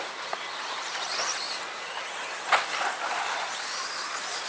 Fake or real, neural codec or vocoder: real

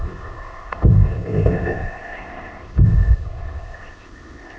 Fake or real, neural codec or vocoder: fake, codec, ZipCodec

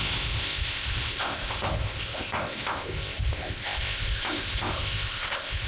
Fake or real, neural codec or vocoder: fake, codec, ZipCodec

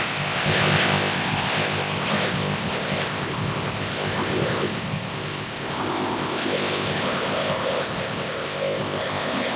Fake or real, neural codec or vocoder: fake, codec, ZipCodec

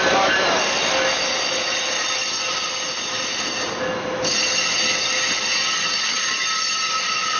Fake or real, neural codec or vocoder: real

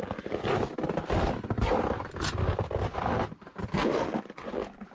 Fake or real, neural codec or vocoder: real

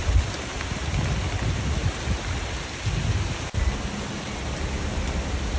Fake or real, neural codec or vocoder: real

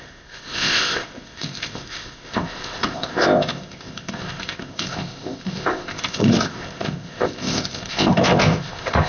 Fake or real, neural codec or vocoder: fake, codec, ZipCodec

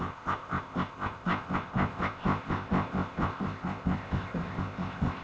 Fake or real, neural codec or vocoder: fake, codec, ZipCodec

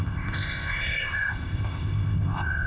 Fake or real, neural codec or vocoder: fake, codec, ZipCodec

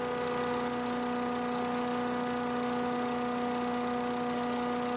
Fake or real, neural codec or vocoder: real